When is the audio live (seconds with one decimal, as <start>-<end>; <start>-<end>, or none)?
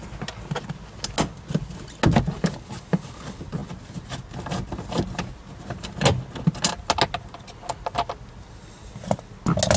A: 0.0-9.8